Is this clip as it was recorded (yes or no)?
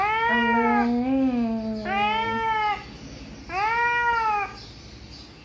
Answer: yes